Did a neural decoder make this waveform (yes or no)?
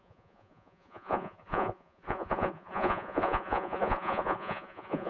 yes